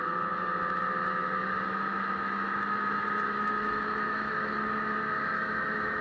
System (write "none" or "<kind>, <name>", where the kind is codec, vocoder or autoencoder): autoencoder, DAC-VAE